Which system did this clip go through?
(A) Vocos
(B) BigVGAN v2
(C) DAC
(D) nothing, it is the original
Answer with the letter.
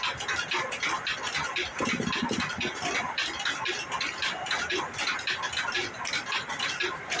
D